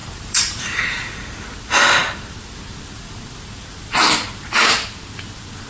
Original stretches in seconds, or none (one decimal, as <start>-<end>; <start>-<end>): 1.1-5.7